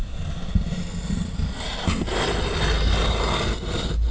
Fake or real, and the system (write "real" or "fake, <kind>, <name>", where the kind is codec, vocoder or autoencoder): real